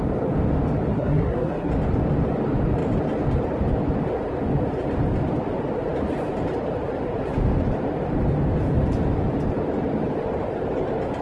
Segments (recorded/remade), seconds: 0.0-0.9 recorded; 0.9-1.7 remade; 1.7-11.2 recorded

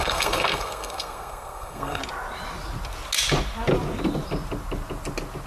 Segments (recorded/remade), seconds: 0.0-2.0 remade; 2.0-5.5 recorded